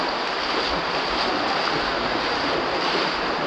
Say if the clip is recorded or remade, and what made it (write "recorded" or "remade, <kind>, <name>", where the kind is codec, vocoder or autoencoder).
recorded